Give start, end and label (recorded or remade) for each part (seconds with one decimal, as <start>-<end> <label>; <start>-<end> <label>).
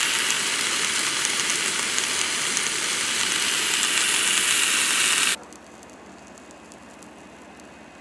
0.0-8.0 recorded